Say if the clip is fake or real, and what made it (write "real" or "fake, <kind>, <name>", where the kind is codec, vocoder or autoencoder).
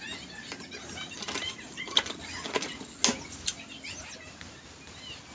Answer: real